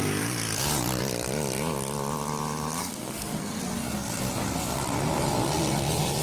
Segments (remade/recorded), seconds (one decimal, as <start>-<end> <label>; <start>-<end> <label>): 0.0-2.8 recorded; 2.8-3.6 remade; 3.6-6.2 recorded